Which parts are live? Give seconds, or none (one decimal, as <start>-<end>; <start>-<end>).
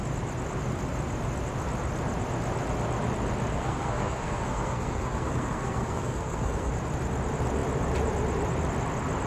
0.0-3.5; 6.7-9.3